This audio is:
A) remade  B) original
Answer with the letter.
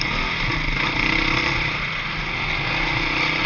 B